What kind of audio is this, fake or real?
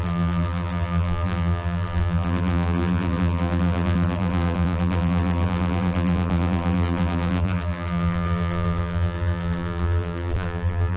fake